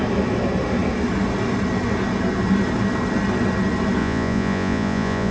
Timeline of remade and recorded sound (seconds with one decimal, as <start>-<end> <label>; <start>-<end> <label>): 0.0-4.0 recorded; 4.0-5.3 remade

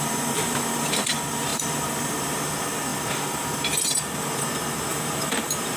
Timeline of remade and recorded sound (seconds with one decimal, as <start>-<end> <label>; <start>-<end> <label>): 0.0-2.9 remade; 2.9-4.9 recorded; 4.9-5.8 remade

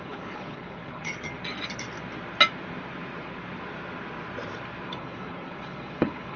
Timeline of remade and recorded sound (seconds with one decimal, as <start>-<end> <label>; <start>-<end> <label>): 0.0-1.1 remade; 1.1-4.9 recorded; 4.9-6.4 remade

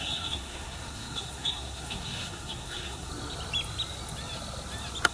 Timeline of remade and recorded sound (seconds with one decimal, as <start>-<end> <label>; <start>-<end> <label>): 0.0-3.1 remade; 3.1-5.1 recorded

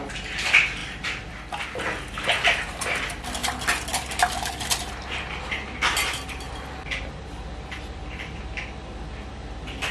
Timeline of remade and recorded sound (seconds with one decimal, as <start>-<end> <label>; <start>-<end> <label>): 0.0-0.8 recorded; 0.8-1.3 remade; 1.3-7.5 recorded; 7.5-8.4 remade; 8.4-9.9 recorded

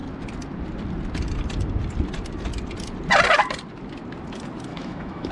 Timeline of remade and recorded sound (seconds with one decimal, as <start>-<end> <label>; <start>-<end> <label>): 0.0-4.7 recorded; 4.7-5.3 remade

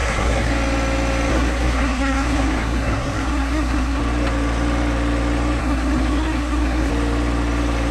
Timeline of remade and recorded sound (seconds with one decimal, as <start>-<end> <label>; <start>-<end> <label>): 0.0-0.5 remade; 0.5-1.3 recorded; 1.3-4.0 remade; 4.0-5.6 recorded; 5.6-6.9 remade; 6.9-7.9 recorded

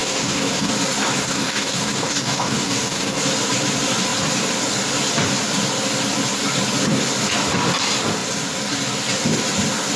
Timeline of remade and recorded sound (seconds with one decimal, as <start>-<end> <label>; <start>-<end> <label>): 0.0-0.7 remade; 0.7-1.2 recorded; 1.2-3.2 remade; 3.2-10.0 recorded